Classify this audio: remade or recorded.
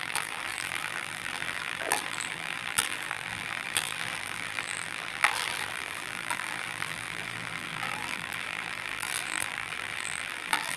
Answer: remade